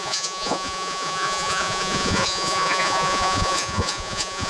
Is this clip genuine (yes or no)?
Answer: no